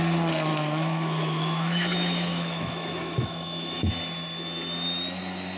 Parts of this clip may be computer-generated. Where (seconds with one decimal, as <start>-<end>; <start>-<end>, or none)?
0.5-3.9